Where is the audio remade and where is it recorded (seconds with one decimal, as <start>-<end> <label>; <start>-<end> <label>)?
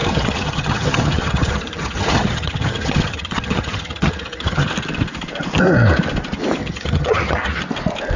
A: 0.0-4.7 remade; 4.7-6.6 recorded; 6.6-7.6 remade; 7.6-8.2 recorded